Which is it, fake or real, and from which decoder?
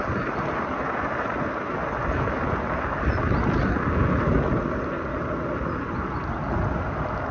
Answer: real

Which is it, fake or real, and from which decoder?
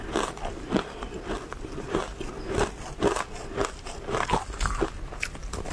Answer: real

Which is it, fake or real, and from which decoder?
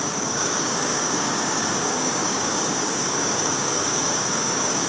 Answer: fake, codec, DAC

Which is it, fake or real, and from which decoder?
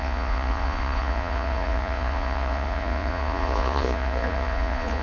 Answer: fake, vocoder, Vocos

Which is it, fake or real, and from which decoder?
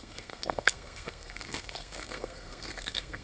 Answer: fake, codec, SNAC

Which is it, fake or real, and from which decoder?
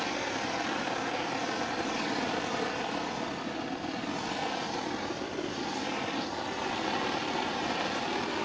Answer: real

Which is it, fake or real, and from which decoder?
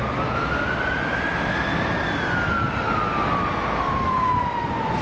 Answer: real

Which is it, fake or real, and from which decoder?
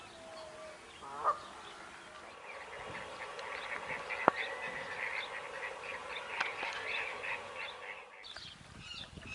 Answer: real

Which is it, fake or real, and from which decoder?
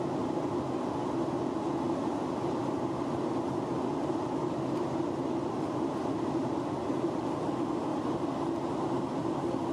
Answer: real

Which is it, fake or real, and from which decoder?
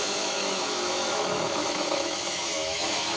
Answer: fake, autoencoder, DAC-VAE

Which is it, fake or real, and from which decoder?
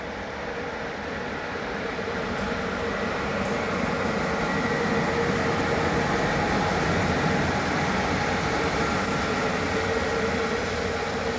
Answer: real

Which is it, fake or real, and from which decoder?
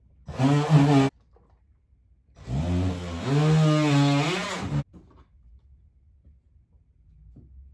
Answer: real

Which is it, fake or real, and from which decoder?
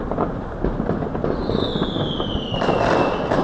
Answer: real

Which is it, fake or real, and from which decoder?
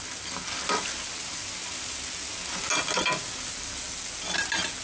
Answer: real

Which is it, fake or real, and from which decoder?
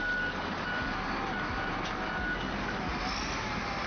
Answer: real